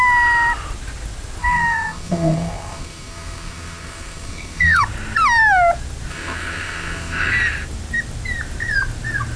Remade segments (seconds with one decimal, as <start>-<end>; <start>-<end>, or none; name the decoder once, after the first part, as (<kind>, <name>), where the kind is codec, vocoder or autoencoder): 1.4-4.8 (codec, SNAC); 6.1-7.3